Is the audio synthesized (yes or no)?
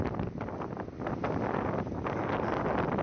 no